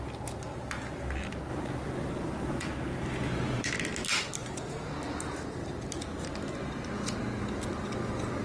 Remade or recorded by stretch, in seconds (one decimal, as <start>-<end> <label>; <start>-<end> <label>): 0.0-8.4 recorded